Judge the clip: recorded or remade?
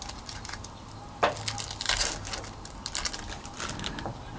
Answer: recorded